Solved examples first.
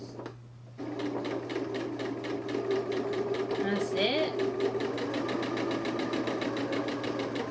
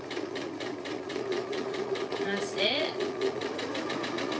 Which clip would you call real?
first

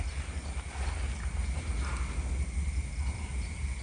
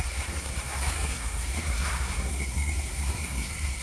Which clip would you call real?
first